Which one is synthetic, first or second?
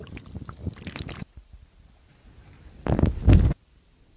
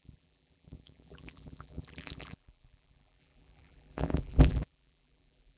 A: second